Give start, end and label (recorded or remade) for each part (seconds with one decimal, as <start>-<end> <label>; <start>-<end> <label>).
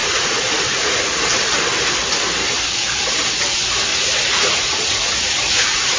0.0-1.3 remade; 1.3-3.9 recorded; 3.9-6.0 remade